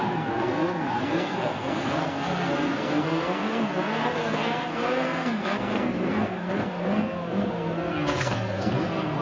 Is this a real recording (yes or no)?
no